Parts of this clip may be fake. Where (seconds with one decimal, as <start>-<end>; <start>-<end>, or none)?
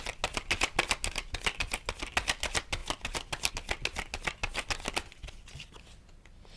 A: none